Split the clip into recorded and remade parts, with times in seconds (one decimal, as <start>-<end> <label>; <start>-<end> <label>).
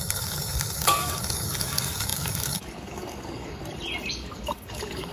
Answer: 0.0-3.6 remade; 3.6-4.1 recorded; 4.1-5.1 remade